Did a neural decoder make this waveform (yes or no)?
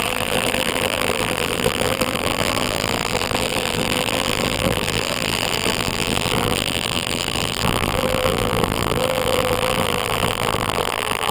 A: yes